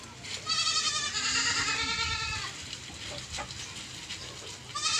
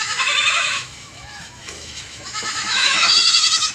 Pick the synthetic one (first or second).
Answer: second